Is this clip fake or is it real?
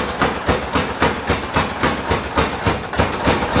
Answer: real